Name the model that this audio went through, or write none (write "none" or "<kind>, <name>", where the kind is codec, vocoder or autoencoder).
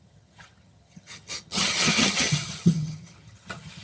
vocoder, HiFi-GAN